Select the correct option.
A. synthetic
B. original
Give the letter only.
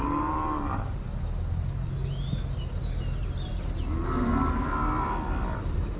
B